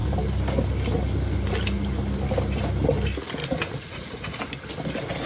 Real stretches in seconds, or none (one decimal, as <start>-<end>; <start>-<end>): 0.0-3.4; 4.4-5.3